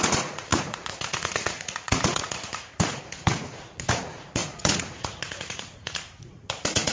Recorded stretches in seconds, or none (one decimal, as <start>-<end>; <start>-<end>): none